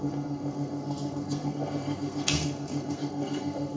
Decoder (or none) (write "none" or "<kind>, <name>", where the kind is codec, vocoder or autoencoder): codec, SNAC